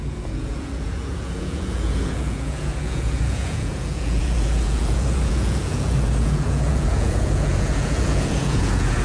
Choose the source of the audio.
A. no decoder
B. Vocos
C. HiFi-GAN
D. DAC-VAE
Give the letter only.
B